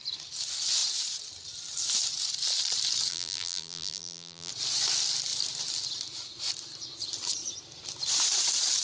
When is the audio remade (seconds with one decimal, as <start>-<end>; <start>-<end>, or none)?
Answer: 3.1-4.5